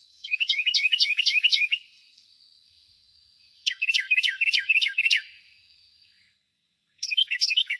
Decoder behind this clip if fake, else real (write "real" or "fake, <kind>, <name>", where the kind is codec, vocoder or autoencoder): fake, codec, SNAC